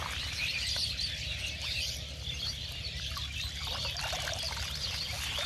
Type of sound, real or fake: real